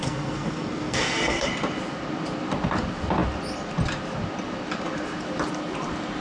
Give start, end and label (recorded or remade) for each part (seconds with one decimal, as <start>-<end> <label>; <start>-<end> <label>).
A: 0.0-1.5 remade; 1.5-6.2 recorded